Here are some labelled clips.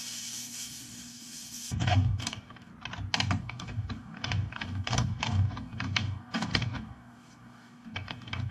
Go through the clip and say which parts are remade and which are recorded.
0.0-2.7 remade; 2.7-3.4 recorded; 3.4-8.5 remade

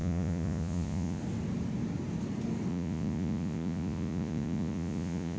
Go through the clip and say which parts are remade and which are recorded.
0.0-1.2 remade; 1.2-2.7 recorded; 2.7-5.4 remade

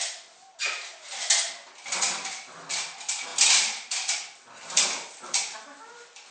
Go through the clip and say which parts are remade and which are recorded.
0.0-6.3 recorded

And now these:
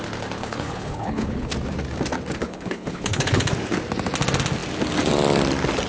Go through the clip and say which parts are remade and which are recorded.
0.0-0.4 recorded; 0.4-1.5 remade; 1.5-2.4 recorded; 2.4-3.4 remade; 3.4-5.9 recorded